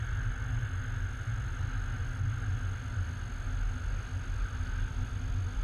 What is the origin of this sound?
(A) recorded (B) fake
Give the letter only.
A